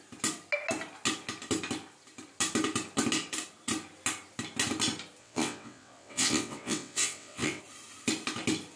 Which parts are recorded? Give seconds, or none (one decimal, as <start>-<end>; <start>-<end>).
0.0-5.2; 7.6-8.8